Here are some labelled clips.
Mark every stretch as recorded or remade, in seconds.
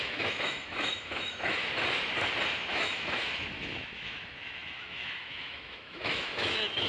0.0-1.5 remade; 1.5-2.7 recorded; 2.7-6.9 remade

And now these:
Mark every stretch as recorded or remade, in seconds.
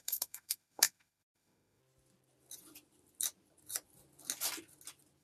0.0-1.8 remade; 1.8-5.2 recorded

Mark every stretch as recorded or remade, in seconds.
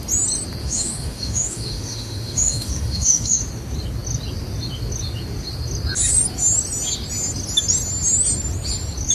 0.0-0.6 recorded; 0.6-3.4 remade; 3.4-9.1 recorded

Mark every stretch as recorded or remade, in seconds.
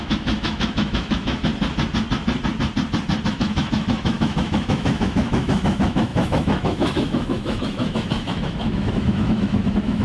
0.0-1.5 remade; 1.5-3.3 recorded; 3.3-10.0 remade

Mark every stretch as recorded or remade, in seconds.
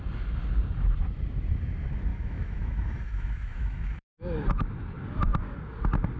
0.0-2.1 recorded; 2.1-4.6 remade; 4.6-6.2 recorded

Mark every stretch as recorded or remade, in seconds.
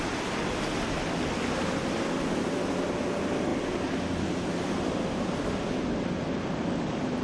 0.0-7.2 recorded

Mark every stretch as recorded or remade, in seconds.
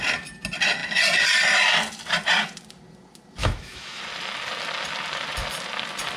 0.0-3.4 recorded; 3.4-4.0 remade; 4.0-6.2 recorded